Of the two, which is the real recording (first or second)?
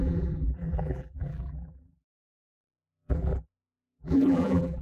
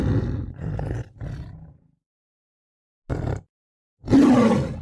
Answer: second